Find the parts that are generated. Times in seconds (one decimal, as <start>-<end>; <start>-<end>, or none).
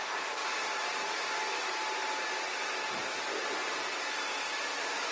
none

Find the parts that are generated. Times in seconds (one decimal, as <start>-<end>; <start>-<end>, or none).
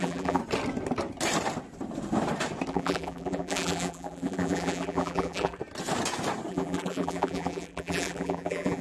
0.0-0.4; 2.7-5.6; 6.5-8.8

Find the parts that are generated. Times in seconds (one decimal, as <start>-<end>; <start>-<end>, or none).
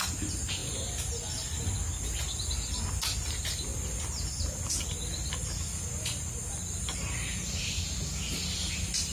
none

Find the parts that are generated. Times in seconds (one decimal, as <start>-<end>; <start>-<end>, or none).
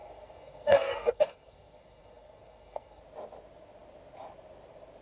0.0-3.0